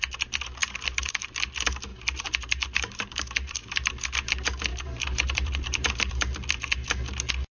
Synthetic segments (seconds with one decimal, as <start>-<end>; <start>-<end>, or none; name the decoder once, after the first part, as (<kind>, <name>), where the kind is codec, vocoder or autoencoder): 0.6-1.3 (vocoder, BigVGAN v2); 1.9-3.9; 4.7-6.1